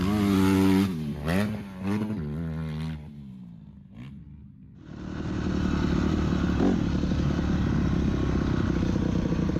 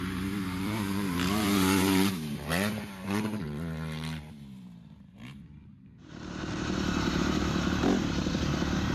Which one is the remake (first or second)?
second